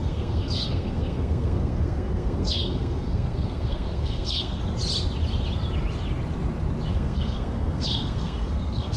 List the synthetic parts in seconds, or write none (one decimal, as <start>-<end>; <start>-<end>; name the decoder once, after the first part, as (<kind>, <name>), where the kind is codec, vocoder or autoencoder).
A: 0.0-4.6 (codec, SNAC); 6.9-9.0